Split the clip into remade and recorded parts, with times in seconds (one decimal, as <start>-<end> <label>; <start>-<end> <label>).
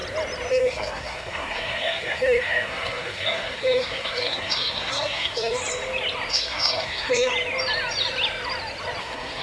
0.0-0.5 recorded; 0.5-5.6 remade; 5.6-6.3 recorded; 6.3-7.3 remade; 7.3-9.0 recorded; 9.0-9.4 remade